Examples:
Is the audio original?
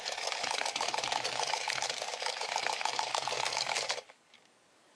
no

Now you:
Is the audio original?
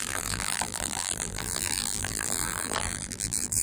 no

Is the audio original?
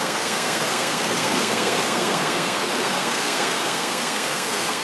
no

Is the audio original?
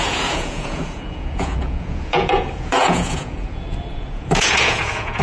no